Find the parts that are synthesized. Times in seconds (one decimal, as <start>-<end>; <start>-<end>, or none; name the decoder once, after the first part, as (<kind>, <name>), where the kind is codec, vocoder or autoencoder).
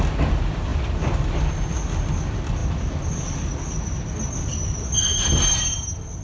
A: none